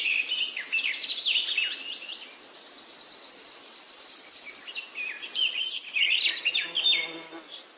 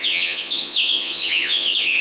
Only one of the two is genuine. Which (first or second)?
first